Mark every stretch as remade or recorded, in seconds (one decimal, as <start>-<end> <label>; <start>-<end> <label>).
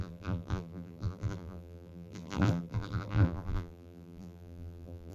0.0-5.1 remade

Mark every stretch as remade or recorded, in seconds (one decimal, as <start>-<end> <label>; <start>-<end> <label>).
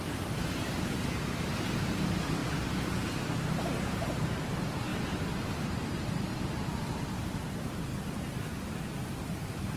0.0-7.9 remade; 7.9-8.8 recorded; 8.8-9.8 remade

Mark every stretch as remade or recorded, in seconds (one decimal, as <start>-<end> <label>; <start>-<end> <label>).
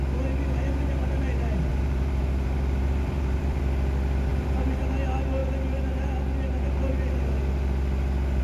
0.0-1.7 recorded; 1.7-3.6 remade; 3.6-4.3 recorded; 4.3-4.8 remade; 4.8-8.4 recorded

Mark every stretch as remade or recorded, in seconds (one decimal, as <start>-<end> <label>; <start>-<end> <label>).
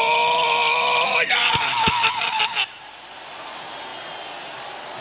0.0-1.4 recorded; 1.4-3.5 remade; 3.5-5.0 recorded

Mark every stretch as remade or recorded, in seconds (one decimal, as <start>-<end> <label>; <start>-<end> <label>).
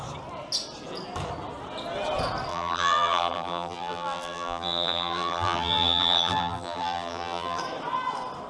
0.0-2.5 recorded; 2.5-7.6 remade; 7.6-8.5 recorded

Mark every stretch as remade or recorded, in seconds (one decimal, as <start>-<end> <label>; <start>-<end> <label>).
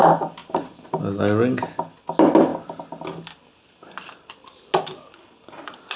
0.0-0.4 recorded; 0.4-1.2 remade; 1.2-6.0 recorded